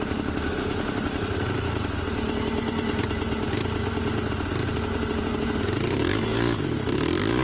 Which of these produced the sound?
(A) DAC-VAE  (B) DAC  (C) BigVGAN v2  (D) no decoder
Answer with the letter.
D